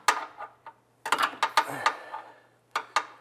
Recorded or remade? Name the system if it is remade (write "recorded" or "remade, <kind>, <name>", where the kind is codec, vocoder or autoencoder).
recorded